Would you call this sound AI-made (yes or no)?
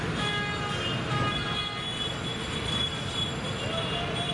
no